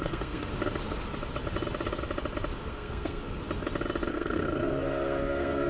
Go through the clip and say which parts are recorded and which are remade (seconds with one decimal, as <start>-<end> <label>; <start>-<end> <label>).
0.0-0.5 remade; 0.5-2.7 recorded; 2.7-3.2 remade; 3.2-4.1 recorded; 4.1-5.7 remade